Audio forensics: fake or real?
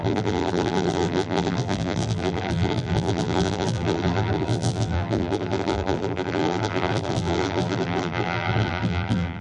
fake